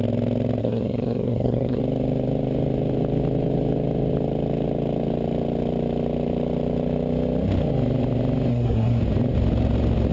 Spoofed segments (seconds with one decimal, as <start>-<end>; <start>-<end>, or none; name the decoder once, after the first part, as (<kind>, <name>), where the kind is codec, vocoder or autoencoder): 0.6-1.8 (codec, SNAC); 8.5-9.0